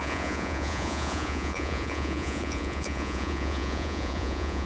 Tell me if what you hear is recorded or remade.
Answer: remade